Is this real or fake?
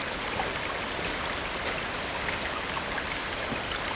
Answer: real